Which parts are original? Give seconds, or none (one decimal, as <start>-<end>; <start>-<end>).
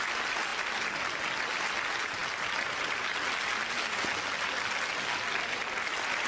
0.0-6.3